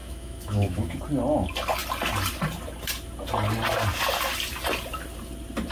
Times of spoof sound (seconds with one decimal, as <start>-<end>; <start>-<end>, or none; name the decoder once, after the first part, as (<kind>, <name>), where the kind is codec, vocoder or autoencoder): 0.0-1.0 (autoencoder, DAC-VAE)